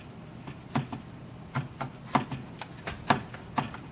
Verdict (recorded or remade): recorded